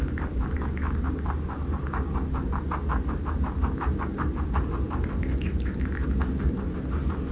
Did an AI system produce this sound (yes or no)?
no